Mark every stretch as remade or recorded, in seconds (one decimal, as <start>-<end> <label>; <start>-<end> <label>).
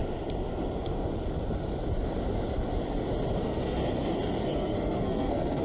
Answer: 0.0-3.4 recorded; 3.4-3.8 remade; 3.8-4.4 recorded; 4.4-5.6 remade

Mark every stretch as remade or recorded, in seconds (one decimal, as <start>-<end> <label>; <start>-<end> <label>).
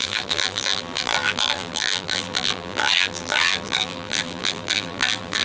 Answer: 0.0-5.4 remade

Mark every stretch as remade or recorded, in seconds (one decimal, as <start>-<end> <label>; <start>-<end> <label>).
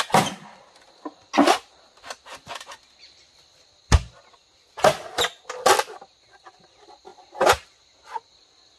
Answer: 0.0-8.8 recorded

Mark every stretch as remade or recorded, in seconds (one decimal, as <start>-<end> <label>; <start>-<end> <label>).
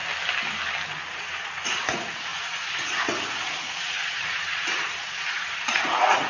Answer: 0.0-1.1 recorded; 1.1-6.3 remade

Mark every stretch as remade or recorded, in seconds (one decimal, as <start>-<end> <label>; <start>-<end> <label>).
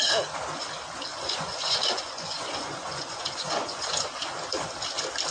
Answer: 0.0-1.1 recorded; 1.1-4.3 remade; 4.3-5.3 recorded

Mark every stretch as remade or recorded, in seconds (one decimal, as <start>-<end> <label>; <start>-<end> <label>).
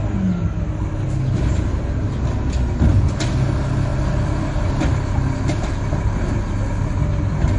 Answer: 0.0-2.9 recorded; 2.9-3.5 remade; 3.5-3.9 recorded; 3.9-4.9 remade; 4.9-7.6 recorded